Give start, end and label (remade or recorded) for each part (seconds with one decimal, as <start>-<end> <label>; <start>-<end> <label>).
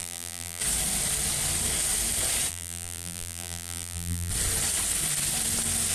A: 0.0-0.6 remade; 0.6-2.5 recorded; 2.5-4.3 remade; 4.3-5.9 recorded